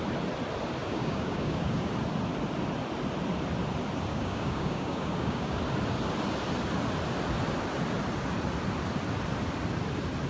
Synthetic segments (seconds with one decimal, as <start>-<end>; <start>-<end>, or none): 0.8-1.9; 4.1-5.6